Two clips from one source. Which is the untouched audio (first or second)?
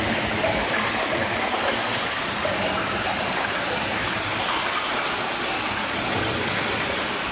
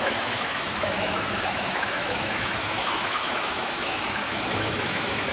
first